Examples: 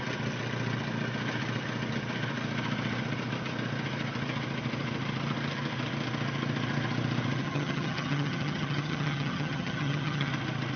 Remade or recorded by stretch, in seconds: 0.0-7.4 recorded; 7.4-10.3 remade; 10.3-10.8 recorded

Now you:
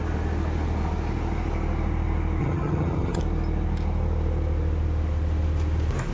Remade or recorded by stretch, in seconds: 0.0-2.4 recorded; 2.4-3.2 remade; 3.2-6.1 recorded

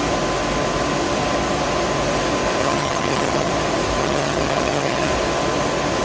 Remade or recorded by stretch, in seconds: 0.0-2.6 recorded; 2.6-3.5 remade; 3.5-4.0 recorded; 4.0-5.1 remade; 5.1-6.0 recorded

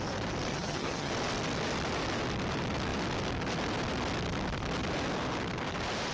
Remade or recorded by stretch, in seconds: 0.0-0.5 recorded; 0.5-1.1 remade; 1.1-6.1 recorded